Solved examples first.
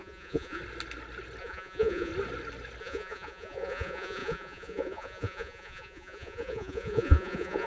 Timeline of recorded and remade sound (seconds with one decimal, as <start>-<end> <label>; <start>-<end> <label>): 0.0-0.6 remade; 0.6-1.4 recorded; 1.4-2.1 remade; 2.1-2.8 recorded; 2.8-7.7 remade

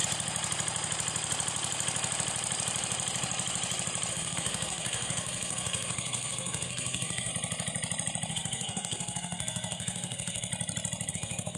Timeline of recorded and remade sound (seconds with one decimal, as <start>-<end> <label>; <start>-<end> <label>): 0.0-4.1 recorded; 4.1-7.3 remade; 7.3-8.3 recorded; 8.3-10.5 remade; 10.5-11.1 recorded; 11.1-11.6 remade

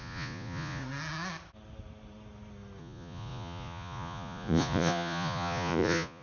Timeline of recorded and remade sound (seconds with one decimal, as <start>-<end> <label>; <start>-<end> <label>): 0.0-0.8 remade; 0.8-2.8 recorded; 2.8-6.2 remade